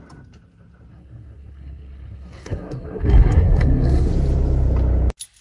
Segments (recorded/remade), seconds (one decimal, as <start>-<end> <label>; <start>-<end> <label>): 0.0-0.9 recorded; 0.9-4.1 remade; 4.1-5.4 recorded